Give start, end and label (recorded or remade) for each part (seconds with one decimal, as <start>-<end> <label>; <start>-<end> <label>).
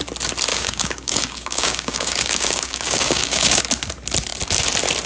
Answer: 0.0-0.5 recorded; 0.5-3.6 remade; 3.6-5.1 recorded